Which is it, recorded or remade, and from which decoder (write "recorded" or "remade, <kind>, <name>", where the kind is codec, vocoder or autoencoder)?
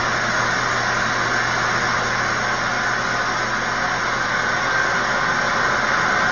recorded